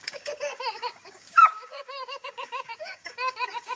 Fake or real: fake